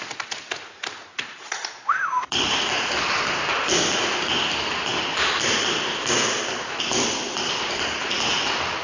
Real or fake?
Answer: real